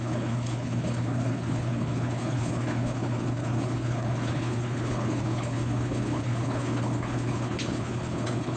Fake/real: fake